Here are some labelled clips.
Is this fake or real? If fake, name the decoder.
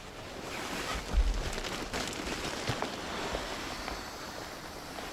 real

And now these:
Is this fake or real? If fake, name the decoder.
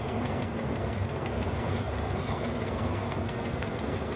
fake, codec, SNAC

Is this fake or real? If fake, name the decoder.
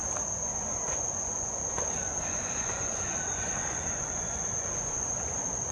fake, vocoder, Vocos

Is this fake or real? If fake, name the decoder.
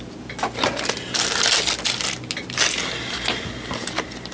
real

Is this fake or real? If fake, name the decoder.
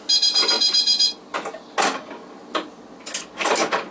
real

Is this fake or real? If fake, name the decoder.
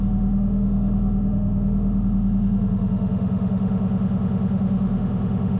fake, autoencoder, DAC-VAE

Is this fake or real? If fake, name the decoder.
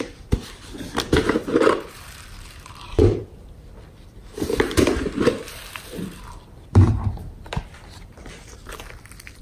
fake, vocoder, BigVGAN v2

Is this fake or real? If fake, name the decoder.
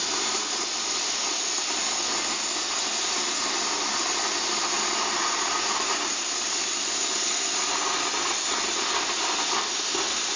real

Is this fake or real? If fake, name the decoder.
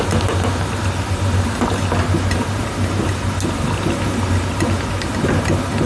real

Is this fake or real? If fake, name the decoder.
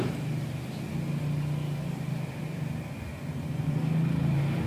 real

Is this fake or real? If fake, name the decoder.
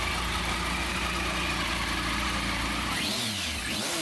real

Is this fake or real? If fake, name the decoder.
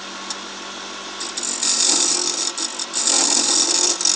real